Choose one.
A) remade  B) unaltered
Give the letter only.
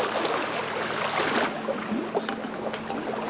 B